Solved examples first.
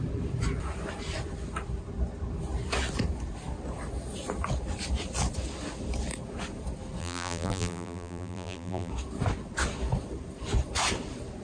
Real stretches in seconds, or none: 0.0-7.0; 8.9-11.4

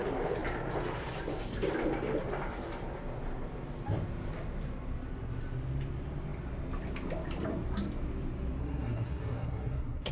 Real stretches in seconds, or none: 0.0-8.6